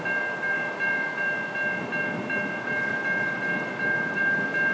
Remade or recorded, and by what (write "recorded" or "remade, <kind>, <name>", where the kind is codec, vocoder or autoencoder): recorded